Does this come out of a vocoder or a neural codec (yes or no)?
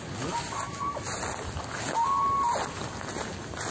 no